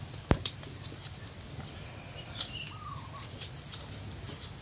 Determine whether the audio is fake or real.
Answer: real